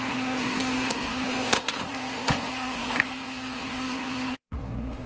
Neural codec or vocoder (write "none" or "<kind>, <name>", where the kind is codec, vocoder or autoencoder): codec, SNAC